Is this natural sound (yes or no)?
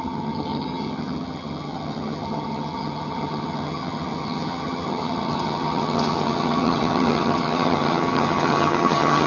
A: no